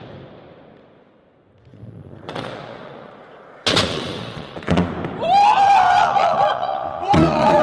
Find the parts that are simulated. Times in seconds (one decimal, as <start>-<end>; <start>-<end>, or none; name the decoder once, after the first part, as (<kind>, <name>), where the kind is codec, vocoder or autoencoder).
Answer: 1.7-4.9 (vocoder, Vocos); 6.0-7.6